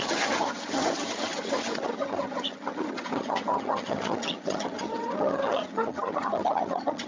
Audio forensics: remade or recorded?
remade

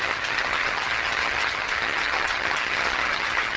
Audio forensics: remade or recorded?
remade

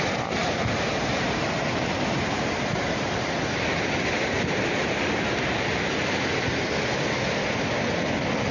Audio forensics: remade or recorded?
recorded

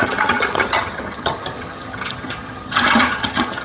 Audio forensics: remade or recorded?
remade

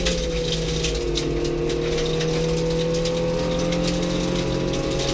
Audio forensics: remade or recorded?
recorded